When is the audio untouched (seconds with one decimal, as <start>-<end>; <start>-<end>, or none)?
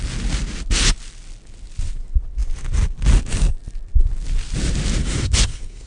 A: 0.0-5.0